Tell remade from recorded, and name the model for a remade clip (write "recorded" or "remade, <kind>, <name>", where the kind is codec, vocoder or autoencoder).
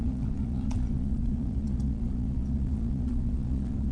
remade, vocoder, Vocos